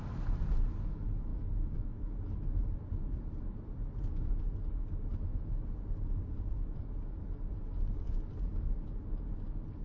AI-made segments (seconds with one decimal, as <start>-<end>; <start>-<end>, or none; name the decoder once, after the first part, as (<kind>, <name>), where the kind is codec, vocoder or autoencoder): 1.3-2.2 (autoencoder, DAC-VAE)